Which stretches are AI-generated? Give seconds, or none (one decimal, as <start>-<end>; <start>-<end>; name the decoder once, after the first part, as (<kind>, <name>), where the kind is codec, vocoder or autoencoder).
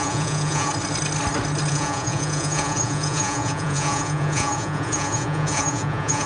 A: 0.0-0.7 (vocoder, Vocos); 1.7-6.3